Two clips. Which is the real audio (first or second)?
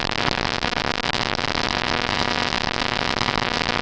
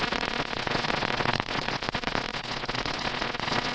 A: first